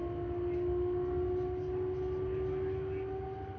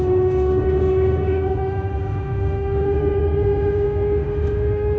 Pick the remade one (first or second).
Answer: second